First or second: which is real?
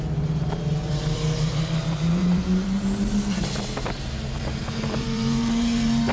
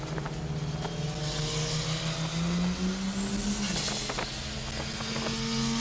second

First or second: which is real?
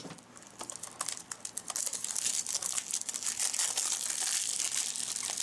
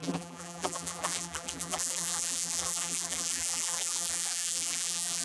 first